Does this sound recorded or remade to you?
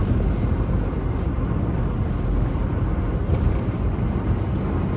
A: recorded